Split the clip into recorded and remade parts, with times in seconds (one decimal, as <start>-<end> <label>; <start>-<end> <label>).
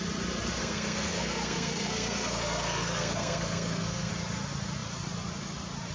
0.0-0.6 recorded; 0.6-4.1 remade; 4.1-5.9 recorded